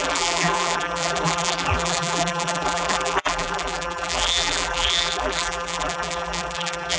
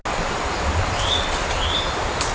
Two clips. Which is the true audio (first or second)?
second